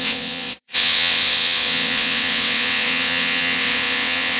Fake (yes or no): yes